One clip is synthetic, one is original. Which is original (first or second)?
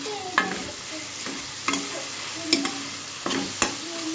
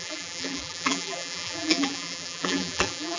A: first